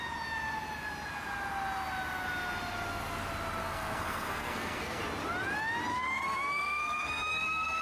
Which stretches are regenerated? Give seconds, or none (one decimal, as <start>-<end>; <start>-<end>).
3.6-5.0; 5.9-7.8